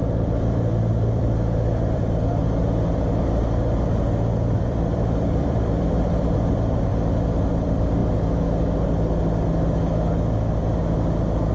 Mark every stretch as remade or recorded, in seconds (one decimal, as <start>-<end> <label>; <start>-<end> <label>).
0.0-2.4 remade; 2.4-4.5 recorded; 4.5-6.9 remade; 6.9-7.5 recorded; 7.5-8.0 remade; 8.0-11.5 recorded